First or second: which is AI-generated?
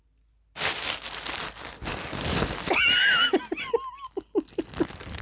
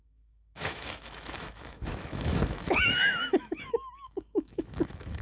second